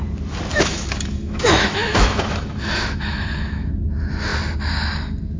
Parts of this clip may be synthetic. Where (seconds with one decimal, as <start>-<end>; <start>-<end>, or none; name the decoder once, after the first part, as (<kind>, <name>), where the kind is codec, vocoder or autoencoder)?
0.5-3.7 (autoencoder, DAC-VAE)